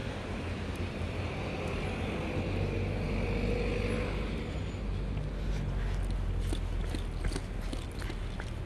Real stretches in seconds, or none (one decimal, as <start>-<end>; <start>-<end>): 1.1-8.7